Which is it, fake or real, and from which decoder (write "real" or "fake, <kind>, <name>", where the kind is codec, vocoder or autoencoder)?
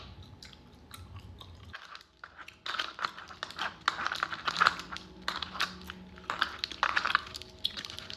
real